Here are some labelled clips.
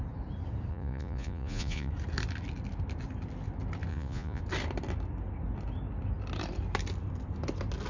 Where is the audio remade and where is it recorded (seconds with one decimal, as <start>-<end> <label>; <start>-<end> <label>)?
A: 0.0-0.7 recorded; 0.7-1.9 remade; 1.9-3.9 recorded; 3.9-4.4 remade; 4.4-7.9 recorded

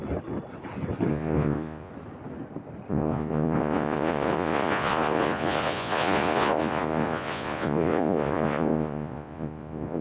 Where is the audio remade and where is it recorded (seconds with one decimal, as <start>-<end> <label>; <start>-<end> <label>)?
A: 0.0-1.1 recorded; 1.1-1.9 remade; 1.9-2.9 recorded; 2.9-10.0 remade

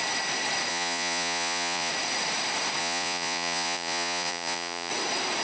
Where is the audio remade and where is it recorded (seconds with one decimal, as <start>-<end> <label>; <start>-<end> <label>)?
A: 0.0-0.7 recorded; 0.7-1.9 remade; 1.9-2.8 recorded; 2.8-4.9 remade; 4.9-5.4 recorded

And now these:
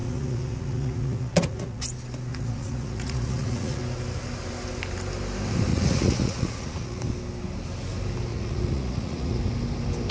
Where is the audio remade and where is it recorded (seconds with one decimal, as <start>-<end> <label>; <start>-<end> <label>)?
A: 0.0-1.8 remade; 1.8-2.3 recorded; 2.3-3.8 remade; 3.8-5.7 recorded; 5.7-7.0 remade; 7.0-8.3 recorded; 8.3-9.4 remade; 9.4-10.1 recorded